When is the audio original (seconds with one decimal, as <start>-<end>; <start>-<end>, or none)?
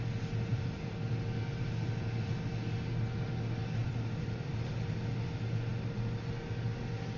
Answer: 0.0-0.5; 1.4-3.8; 4.7-7.2